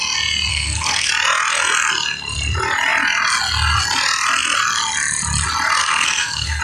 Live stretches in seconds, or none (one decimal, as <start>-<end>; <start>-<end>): 0.0-0.5; 1.1-5.8